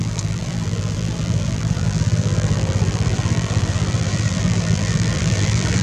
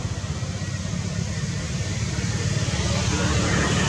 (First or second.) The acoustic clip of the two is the second